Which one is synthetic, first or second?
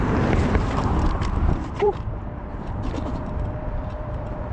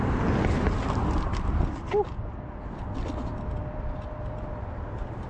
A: first